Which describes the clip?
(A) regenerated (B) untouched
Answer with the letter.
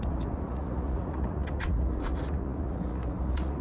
A